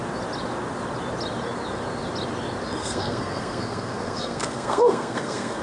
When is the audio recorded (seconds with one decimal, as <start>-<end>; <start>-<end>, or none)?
0.0-2.8

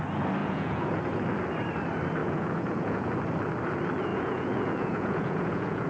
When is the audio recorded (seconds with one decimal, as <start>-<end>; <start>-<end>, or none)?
0.0-0.4; 1.0-2.2; 3.1-4.1

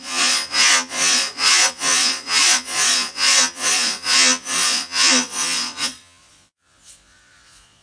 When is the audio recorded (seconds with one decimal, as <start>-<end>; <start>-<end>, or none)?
none

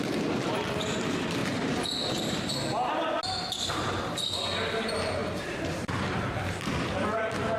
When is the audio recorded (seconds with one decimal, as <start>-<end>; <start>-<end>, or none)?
0.0-1.4; 3.2-5.2